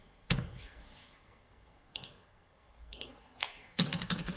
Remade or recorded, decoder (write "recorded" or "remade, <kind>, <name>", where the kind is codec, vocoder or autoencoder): remade, codec, SNAC